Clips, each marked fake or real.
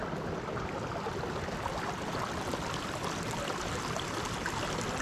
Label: real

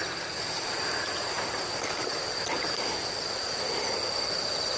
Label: real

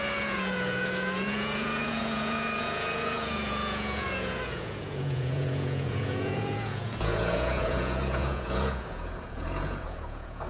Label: fake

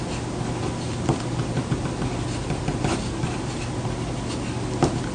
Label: real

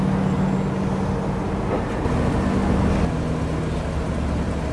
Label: real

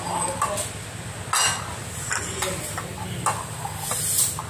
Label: real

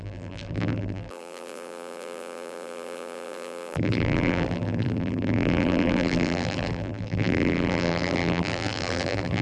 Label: fake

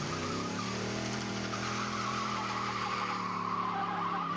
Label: fake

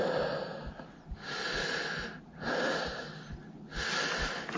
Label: real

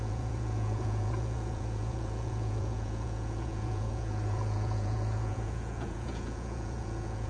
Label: fake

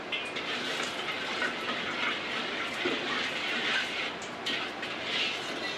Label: real